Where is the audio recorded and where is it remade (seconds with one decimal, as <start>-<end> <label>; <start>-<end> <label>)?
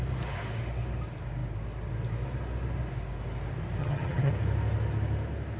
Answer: 0.0-3.8 recorded; 3.8-4.3 remade; 4.3-5.6 recorded